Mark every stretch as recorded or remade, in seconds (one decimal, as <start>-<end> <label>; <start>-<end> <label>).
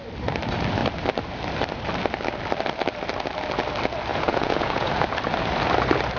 0.0-4.1 recorded; 4.1-4.9 remade; 4.9-6.2 recorded